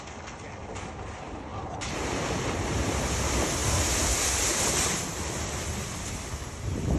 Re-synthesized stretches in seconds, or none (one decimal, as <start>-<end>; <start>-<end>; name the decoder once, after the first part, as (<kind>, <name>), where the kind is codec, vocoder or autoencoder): 3.6-6.1 (vocoder, BigVGAN v2)